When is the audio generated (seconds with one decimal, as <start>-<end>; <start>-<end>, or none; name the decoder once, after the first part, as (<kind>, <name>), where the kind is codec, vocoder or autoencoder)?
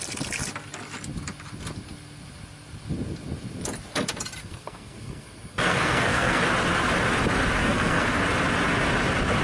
4.4-6.4 (codec, SNAC); 7.6-8.2